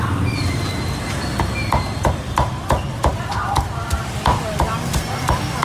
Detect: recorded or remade remade